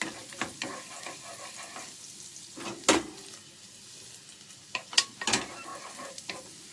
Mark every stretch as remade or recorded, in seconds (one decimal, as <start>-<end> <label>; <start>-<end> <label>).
0.0-6.7 recorded